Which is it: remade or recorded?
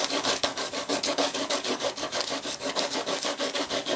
remade